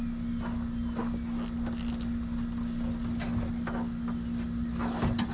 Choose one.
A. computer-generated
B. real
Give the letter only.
B